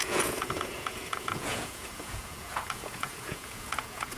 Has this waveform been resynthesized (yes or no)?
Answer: yes